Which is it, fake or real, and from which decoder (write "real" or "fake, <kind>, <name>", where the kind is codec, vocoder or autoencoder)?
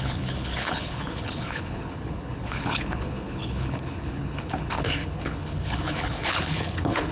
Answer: fake, codec, HILCodec